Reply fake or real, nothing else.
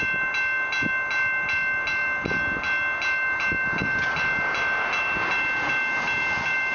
real